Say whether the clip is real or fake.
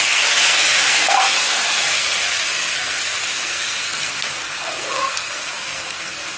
fake